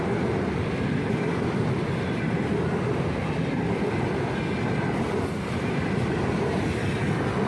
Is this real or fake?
fake